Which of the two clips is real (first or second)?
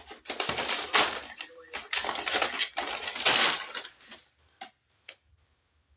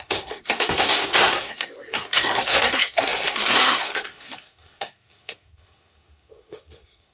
first